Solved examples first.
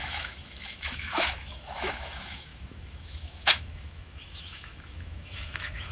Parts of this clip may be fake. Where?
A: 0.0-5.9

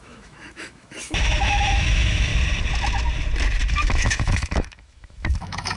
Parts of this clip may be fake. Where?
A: 0.0-2.3; 3.7-5.8

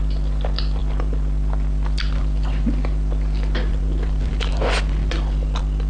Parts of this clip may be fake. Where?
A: none

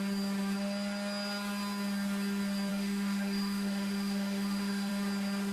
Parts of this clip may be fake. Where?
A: 2.7-4.9

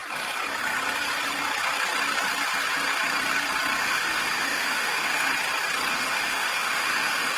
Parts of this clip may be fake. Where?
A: 3.8-5.3; 5.9-7.4